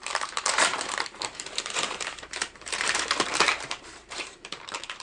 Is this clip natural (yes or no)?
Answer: no